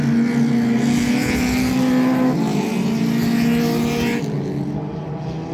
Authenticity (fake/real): real